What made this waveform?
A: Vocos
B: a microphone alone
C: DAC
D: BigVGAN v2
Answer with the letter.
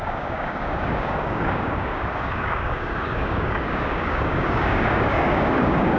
C